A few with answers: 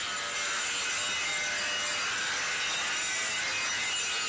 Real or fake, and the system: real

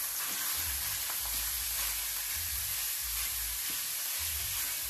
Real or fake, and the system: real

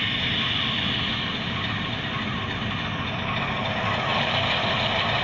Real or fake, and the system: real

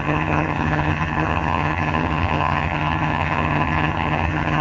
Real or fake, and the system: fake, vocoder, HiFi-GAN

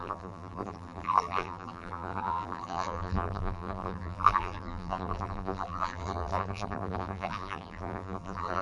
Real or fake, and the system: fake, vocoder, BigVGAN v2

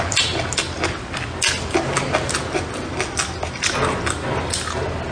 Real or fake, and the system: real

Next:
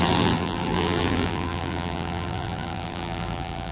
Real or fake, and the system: fake, vocoder, BigVGAN v2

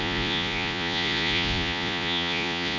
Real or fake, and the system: fake, vocoder, Vocos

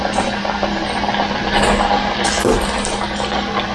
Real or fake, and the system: real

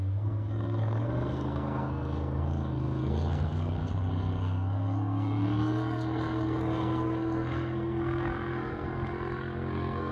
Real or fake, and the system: fake, codec, SNAC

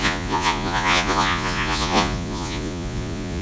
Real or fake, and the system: fake, vocoder, Vocos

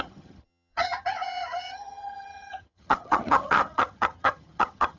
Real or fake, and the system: fake, vocoder, HiFi-GAN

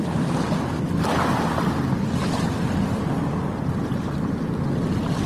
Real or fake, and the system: real